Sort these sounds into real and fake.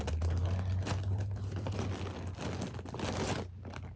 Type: real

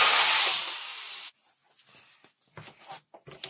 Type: real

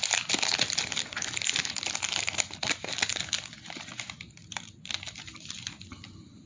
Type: real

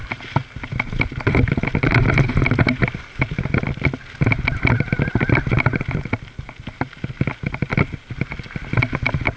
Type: real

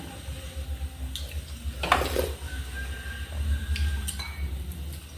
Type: real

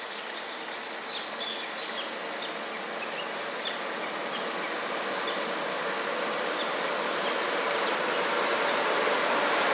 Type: real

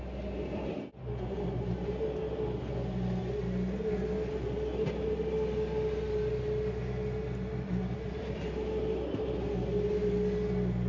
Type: real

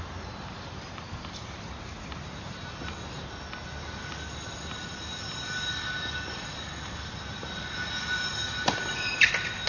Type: real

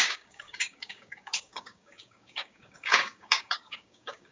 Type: fake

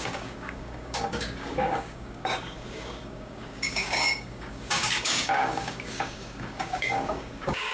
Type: fake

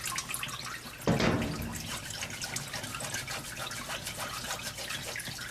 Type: real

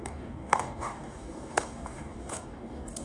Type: fake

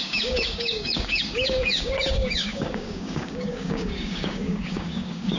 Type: fake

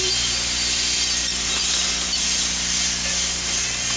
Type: real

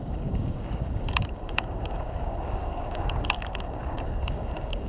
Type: fake